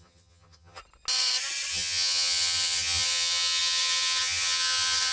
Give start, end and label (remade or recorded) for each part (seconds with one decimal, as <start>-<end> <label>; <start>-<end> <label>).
0.0-0.8 remade; 0.8-1.7 recorded; 1.7-5.1 remade